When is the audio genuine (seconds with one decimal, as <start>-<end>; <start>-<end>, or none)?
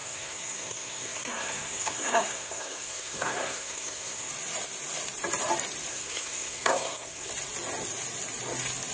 4.3-5.9; 7.3-8.9